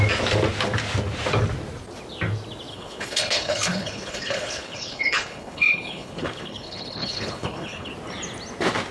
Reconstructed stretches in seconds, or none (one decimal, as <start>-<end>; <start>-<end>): 2.7-7.9